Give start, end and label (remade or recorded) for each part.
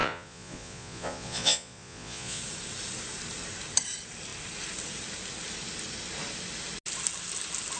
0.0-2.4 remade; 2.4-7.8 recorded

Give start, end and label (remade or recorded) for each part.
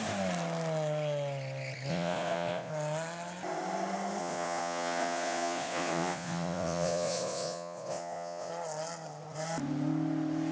0.0-1.9 recorded; 1.9-2.7 remade; 2.7-4.2 recorded; 4.2-8.5 remade; 8.5-10.5 recorded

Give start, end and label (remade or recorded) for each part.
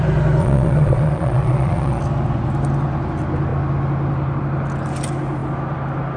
0.0-0.4 recorded; 0.4-2.0 remade; 2.0-6.2 recorded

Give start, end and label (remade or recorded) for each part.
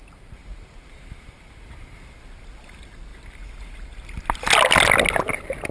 0.0-5.7 recorded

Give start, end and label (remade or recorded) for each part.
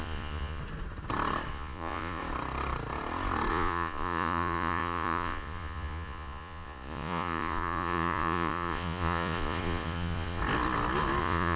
0.0-0.6 remade; 0.6-1.5 recorded; 1.5-2.2 remade; 2.2-3.5 recorded; 3.5-10.4 remade; 10.4-11.2 recorded; 11.2-11.6 remade